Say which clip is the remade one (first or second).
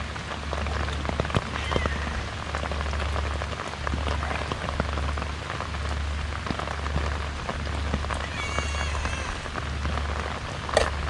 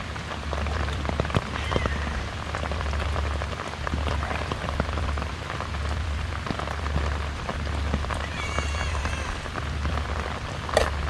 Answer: second